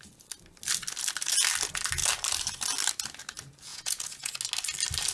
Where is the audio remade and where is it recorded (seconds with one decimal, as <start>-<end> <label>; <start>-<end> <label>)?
0.0-3.7 recorded; 3.7-4.3 remade; 4.3-5.1 recorded